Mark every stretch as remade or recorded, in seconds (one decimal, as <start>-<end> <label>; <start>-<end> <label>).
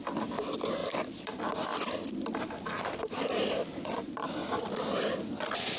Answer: 0.0-0.8 recorded; 0.8-3.2 remade; 3.2-4.4 recorded; 4.4-5.0 remade; 5.0-5.8 recorded